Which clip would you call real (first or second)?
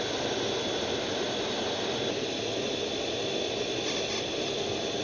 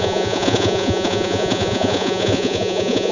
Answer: first